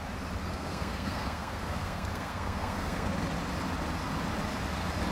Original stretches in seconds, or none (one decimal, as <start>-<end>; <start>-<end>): 0.0-0.5; 3.1-5.1